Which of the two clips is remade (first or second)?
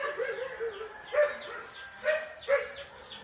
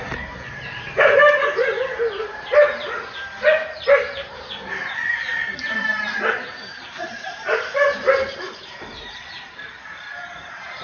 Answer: second